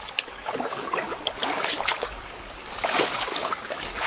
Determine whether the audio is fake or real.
fake